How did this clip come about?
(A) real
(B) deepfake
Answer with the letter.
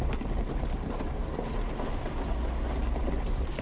A